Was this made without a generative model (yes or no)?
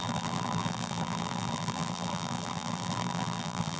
no